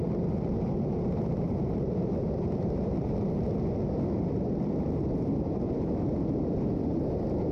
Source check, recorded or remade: recorded